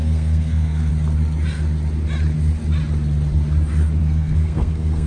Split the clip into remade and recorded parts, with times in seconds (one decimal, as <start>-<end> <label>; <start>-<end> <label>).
0.0-0.9 remade; 0.9-4.0 recorded; 4.0-5.1 remade